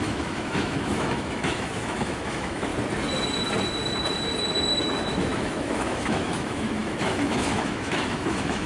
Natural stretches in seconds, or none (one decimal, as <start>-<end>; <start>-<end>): 2.7-4.8